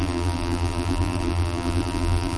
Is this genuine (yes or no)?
no